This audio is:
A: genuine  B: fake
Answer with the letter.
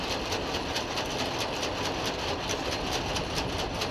A